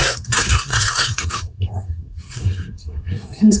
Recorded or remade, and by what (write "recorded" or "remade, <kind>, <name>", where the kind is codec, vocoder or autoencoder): remade, codec, SNAC